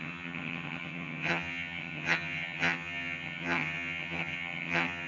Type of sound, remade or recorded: remade